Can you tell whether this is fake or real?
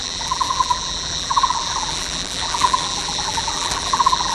fake